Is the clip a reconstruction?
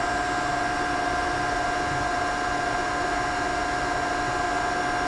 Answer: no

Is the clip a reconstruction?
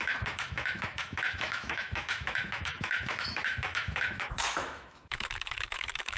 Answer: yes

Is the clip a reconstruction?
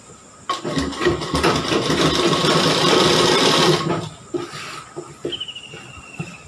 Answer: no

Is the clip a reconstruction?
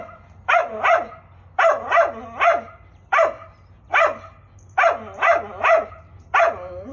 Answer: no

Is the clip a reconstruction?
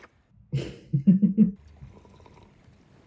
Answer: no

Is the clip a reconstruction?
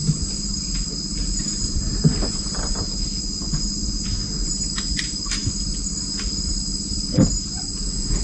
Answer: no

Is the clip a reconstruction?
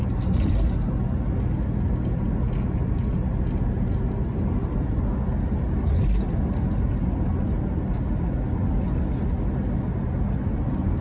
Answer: no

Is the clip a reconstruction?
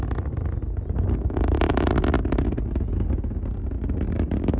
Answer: no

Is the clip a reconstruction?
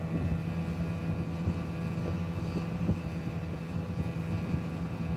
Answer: no